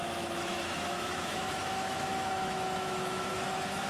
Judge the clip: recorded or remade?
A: remade